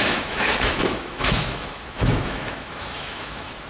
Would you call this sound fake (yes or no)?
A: yes